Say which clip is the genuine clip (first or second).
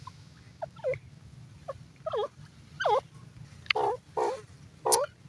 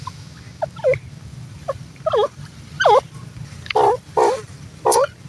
first